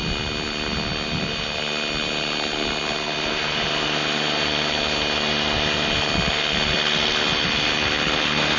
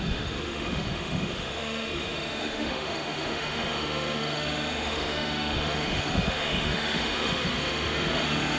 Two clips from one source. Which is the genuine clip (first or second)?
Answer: first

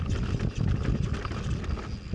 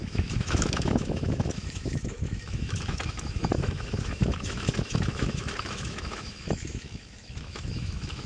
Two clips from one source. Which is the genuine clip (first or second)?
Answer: first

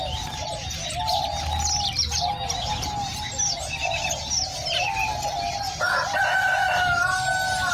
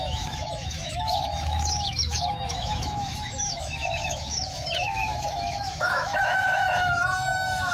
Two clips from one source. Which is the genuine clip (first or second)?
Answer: first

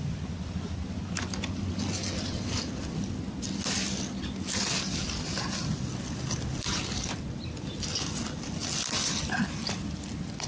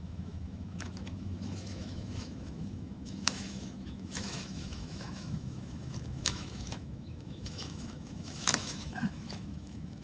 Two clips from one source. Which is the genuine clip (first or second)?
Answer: first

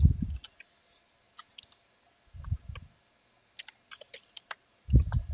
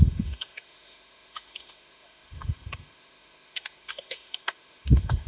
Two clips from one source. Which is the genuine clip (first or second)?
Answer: first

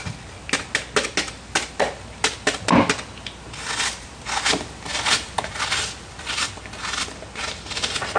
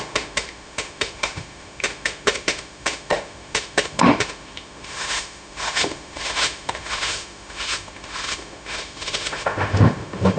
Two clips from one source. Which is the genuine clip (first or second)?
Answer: first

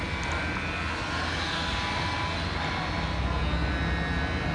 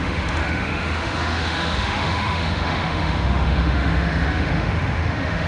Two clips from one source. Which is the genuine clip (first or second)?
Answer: first